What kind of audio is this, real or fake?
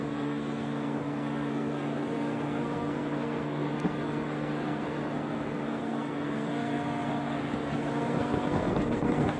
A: fake